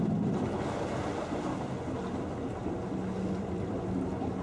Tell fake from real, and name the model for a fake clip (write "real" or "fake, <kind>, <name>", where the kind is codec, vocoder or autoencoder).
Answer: real